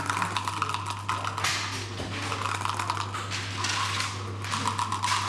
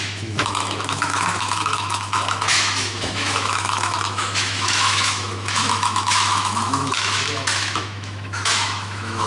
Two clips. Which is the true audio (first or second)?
first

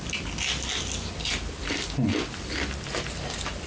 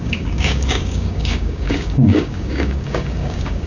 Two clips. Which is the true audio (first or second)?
first